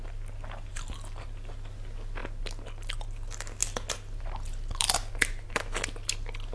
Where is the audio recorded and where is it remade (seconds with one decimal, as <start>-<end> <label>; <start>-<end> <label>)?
0.0-6.5 recorded